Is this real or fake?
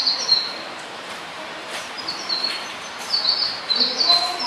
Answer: fake